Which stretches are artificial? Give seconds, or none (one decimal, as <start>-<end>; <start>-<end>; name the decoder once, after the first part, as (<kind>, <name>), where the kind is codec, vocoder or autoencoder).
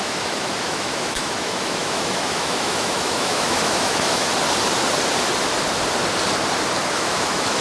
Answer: 0.0-4.3 (autoencoder, DAC-VAE); 6.9-7.6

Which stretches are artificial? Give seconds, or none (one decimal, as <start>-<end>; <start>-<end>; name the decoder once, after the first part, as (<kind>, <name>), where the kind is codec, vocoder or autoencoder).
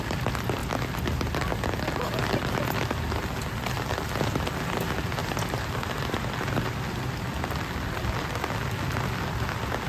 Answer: 5.2-5.7 (vocoder, BigVGAN v2)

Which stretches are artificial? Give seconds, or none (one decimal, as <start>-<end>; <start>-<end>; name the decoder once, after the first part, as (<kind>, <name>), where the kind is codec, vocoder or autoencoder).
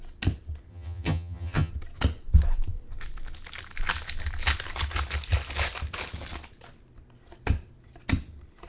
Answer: 0.7-1.7 (vocoder, HiFi-GAN)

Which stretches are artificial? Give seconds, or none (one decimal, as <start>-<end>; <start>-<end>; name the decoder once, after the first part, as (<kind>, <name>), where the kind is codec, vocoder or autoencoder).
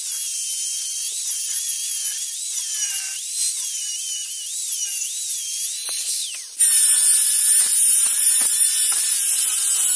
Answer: none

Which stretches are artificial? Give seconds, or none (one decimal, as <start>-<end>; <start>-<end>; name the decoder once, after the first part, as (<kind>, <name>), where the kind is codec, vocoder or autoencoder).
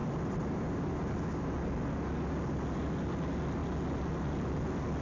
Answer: none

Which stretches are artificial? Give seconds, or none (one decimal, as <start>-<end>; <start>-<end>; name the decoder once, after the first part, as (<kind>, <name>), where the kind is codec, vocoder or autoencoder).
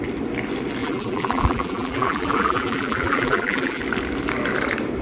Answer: 0.8-3.8 (vocoder, BigVGAN v2)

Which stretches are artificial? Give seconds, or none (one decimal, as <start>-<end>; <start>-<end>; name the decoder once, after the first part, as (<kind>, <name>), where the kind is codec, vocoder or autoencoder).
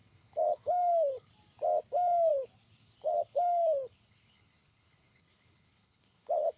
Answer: 0.0-1.3 (codec, HILCodec); 2.3-6.6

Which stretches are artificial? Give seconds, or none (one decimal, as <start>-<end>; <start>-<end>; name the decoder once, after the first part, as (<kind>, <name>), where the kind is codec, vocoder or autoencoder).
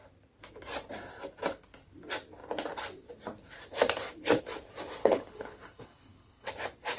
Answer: 5.0-6.5 (codec, HILCodec)